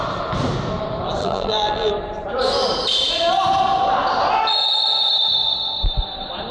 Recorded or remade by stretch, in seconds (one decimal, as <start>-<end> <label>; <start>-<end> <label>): 0.0-1.2 recorded; 1.2-1.9 remade; 1.9-6.5 recorded